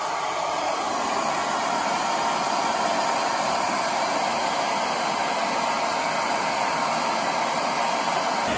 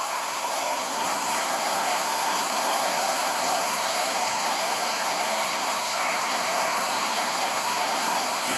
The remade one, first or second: second